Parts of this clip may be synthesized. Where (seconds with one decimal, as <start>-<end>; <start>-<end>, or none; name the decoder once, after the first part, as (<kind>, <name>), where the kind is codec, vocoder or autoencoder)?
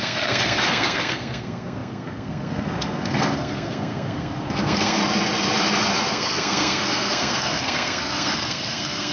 0.0-5.0 (codec, SNAC); 6.1-9.1